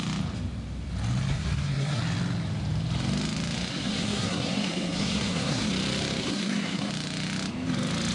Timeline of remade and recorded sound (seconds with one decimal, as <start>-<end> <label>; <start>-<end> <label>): 0.0-1.3 recorded; 1.3-2.0 remade; 2.0-3.7 recorded; 3.7-5.7 remade; 5.7-6.2 recorded; 6.2-6.9 remade; 6.9-8.1 recorded